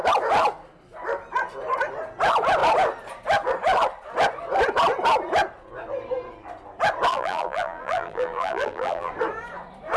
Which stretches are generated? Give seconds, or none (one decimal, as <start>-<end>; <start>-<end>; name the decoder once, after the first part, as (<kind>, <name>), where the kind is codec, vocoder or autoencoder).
7.1-9.1 (vocoder, BigVGAN v2)